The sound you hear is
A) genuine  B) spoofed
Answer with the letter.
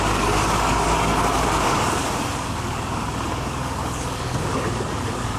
B